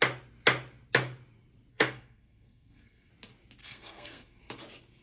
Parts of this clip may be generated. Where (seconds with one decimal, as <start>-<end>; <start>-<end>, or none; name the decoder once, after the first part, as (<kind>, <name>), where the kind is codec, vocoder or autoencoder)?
1.7-3.1 (codec, SNAC); 3.6-4.4